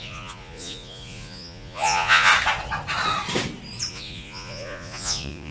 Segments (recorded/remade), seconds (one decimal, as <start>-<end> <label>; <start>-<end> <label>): 0.0-2.3 remade; 2.3-3.9 recorded; 3.9-5.5 remade